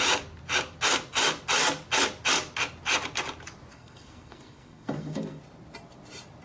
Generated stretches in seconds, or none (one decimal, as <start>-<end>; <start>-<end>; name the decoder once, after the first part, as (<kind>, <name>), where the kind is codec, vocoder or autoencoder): 3.7-5.4 (codec, SNAC)